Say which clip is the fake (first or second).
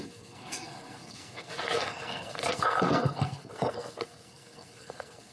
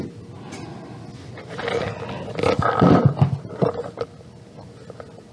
first